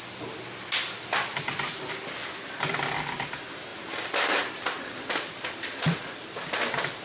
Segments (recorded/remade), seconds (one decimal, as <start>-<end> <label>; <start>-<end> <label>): 0.0-7.0 recorded